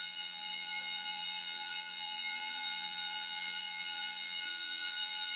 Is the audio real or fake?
fake